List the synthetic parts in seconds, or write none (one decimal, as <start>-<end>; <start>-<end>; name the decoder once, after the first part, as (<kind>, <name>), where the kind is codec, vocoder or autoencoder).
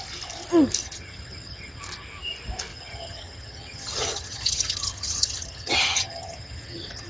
0.8-1.8 (vocoder, HiFi-GAN); 2.7-7.1